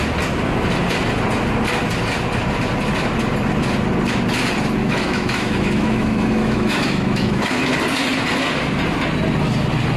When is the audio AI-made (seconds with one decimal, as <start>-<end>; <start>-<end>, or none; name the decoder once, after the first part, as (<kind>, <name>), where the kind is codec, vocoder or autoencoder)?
4.8-7.7 (autoencoder, DAC-VAE)